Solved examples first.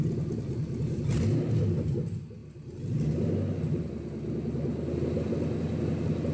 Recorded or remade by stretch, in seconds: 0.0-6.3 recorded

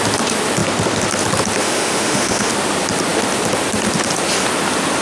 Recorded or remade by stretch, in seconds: 0.0-1.6 recorded; 1.6-2.5 remade; 2.5-5.0 recorded

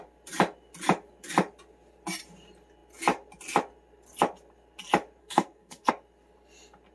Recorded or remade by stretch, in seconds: 0.0-5.2 recorded; 5.2-5.9 remade; 5.9-6.9 recorded

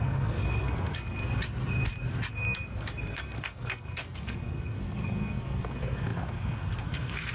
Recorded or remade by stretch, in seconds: 0.0-1.2 remade; 1.2-2.3 recorded; 2.3-7.3 remade

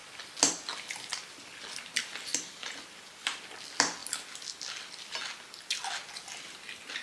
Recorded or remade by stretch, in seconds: 0.0-2.3 recorded; 2.3-3.4 remade; 3.4-7.0 recorded

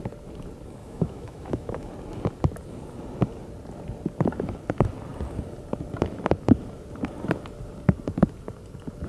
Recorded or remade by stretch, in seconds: 0.0-0.8 recorded; 0.8-1.9 remade; 1.9-9.1 recorded